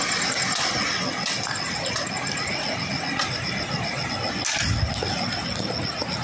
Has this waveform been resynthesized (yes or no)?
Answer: no